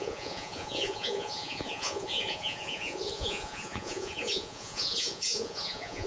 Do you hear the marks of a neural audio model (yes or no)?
yes